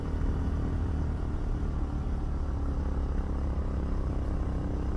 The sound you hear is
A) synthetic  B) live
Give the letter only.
B